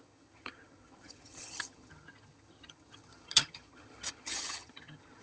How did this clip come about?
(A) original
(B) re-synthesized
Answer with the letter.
B